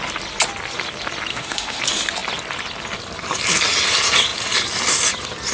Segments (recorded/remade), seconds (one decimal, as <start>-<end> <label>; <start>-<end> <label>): 0.0-1.3 recorded; 1.3-1.8 remade; 1.8-5.5 recorded